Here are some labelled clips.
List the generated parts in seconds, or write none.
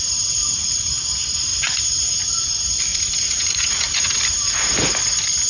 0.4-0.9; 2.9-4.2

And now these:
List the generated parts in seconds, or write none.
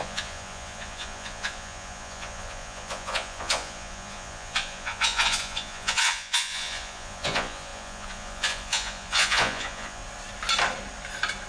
0.0-10.0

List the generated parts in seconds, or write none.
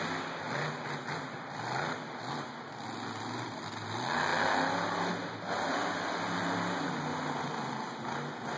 none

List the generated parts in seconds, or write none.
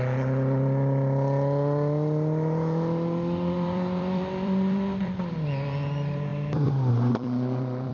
0.0-7.9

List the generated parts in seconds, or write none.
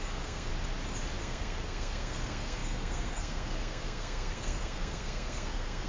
0.0-0.5; 1.2-5.9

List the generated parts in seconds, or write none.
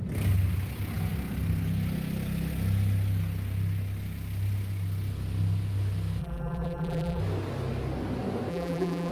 6.2-7.2; 8.5-9.1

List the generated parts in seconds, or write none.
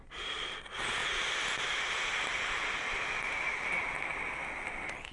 1.0-3.1